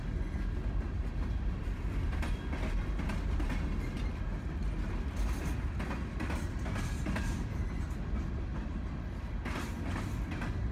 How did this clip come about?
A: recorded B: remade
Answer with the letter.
A